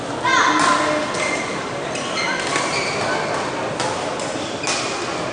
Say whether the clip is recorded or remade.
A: recorded